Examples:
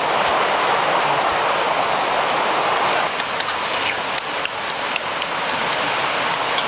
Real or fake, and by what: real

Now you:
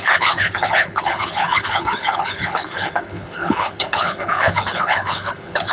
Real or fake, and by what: fake, codec, HILCodec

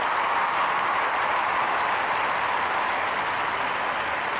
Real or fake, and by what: real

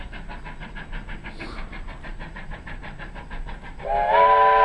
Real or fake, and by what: real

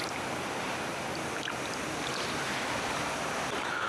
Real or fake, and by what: real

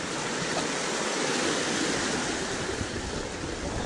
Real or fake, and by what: real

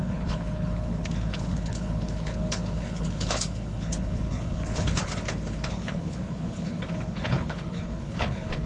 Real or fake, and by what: fake, codec, HILCodec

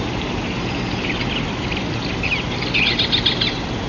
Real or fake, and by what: real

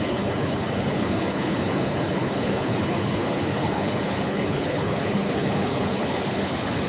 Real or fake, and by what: fake, codec, HILCodec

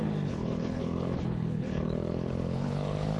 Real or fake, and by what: fake, codec, HILCodec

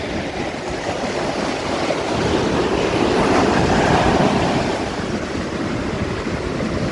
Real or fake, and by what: real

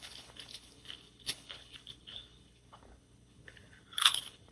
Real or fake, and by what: fake, codec, HILCodec